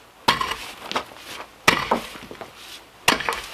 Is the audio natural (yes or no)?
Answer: yes